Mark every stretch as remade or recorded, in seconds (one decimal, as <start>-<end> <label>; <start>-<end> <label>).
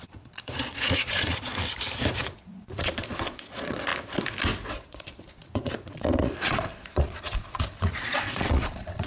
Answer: 0.0-1.5 remade; 1.5-2.2 recorded; 2.2-3.9 remade; 3.9-4.7 recorded; 4.7-9.1 remade